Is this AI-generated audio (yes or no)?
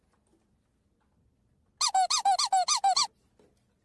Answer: no